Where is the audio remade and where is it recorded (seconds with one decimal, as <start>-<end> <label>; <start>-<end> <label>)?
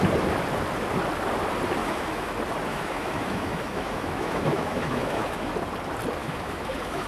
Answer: 0.0-1.8 recorded; 1.8-2.3 remade; 2.3-2.7 recorded; 2.7-5.5 remade; 5.5-6.2 recorded; 6.2-7.1 remade